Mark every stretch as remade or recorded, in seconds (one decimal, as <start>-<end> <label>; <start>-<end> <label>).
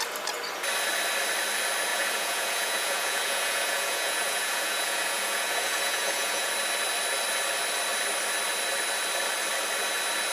0.0-1.9 recorded; 1.9-6.5 remade; 6.5-10.3 recorded